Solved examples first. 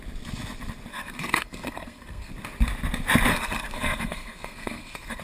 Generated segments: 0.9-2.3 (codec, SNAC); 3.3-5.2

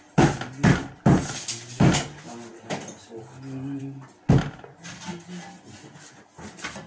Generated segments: none

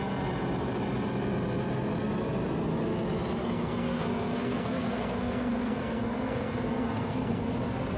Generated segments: 3.4-7.5 (codec, SNAC)

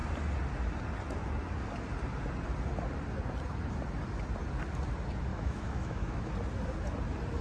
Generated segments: 5.3-6.3 (autoencoder, DAC-VAE)

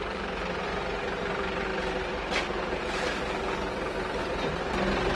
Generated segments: none